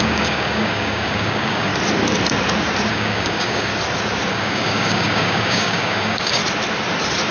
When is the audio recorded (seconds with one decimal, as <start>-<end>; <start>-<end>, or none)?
1.7-2.9; 3.7-4.3; 6.4-7.3